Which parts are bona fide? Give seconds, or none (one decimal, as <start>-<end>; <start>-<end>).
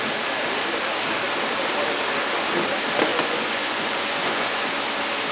0.0-3.1; 4.7-5.3